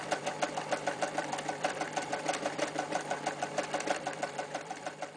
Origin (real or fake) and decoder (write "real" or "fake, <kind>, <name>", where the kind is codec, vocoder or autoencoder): fake, vocoder, BigVGAN v2